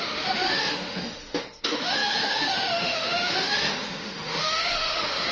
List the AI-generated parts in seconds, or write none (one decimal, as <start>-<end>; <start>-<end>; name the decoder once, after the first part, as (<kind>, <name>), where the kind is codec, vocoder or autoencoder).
0.0-5.3 (autoencoder, DAC-VAE)

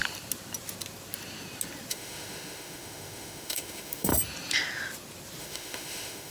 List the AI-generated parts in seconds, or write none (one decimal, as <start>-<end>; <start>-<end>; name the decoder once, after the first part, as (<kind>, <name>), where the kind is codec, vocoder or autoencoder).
1.9-4.1 (autoencoder, DAC-VAE); 5.4-6.3

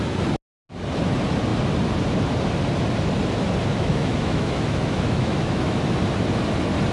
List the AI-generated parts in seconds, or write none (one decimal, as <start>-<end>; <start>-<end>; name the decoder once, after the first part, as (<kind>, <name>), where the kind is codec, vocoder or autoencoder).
3.7-5.8 (autoencoder, DAC-VAE)

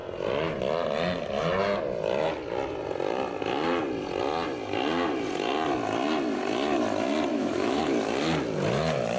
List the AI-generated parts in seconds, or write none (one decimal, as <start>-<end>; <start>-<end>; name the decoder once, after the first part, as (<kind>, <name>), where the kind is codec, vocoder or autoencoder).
7.3-7.8 (autoencoder, DAC-VAE)